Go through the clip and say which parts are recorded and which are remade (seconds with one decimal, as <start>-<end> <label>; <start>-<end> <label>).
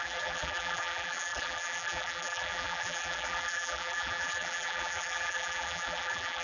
0.0-6.4 remade